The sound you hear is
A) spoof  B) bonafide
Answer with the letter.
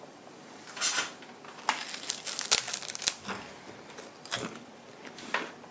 B